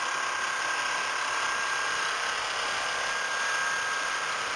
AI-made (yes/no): yes